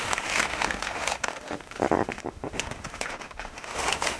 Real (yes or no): no